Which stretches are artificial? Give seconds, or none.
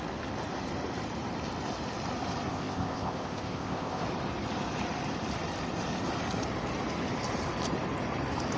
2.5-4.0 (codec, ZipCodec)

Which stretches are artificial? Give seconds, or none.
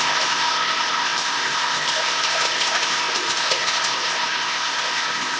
0.0-5.4 (codec, ZipCodec)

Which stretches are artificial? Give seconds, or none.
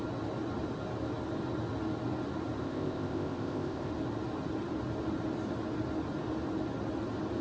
2.6-3.9 (codec, ZipCodec)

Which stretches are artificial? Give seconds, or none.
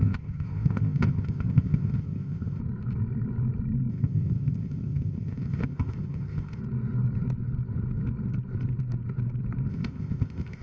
0.0-2.6 (codec, ZipCodec); 3.9-6.6; 9.7-10.6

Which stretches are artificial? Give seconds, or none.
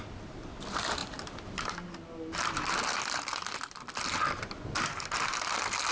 none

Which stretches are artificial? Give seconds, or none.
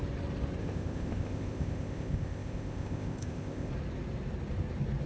0.6-3.7 (codec, ZipCodec)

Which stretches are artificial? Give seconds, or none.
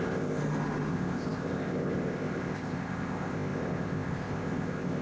0.0-0.4 (codec, ZipCodec); 0.9-5.0